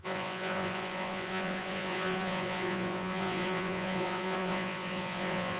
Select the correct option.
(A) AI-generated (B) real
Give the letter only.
A